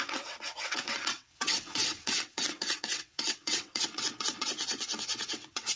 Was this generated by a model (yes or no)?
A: yes